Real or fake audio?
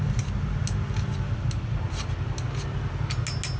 real